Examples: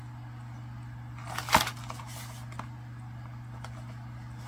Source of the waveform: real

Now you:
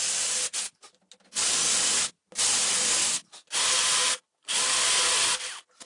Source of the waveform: real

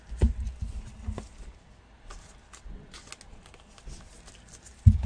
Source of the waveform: real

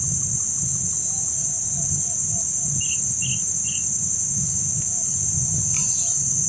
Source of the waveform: real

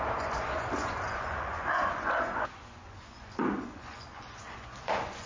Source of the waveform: fake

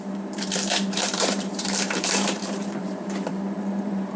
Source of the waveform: fake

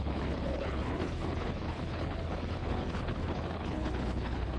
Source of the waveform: fake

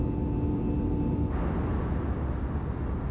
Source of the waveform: real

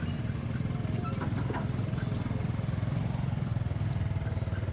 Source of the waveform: real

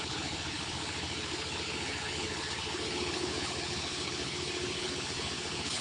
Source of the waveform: fake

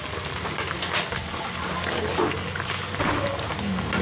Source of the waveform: real